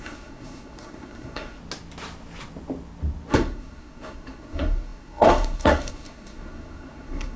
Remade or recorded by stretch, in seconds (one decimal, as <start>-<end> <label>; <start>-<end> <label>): 0.0-1.6 remade; 1.6-3.3 recorded; 3.3-7.4 remade